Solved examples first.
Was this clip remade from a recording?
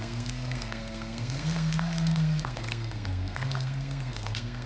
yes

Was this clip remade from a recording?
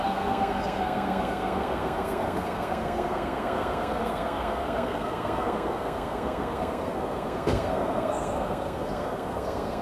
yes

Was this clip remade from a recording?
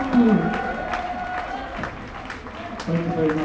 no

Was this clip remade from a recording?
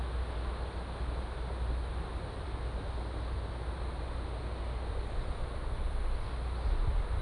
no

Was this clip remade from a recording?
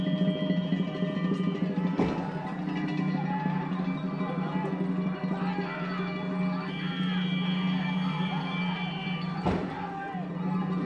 no